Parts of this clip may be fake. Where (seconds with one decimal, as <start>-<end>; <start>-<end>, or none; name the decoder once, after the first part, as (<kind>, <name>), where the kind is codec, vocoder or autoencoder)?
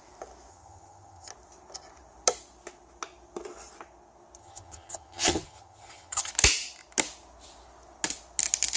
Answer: 0.5-1.3 (vocoder, HiFi-GAN); 4.4-6.3